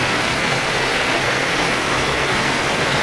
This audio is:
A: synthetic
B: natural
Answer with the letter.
A